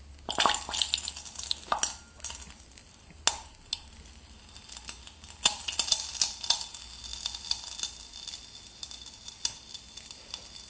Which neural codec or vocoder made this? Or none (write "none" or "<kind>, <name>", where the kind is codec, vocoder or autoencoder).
none